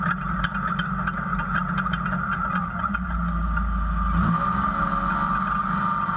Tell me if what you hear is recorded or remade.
recorded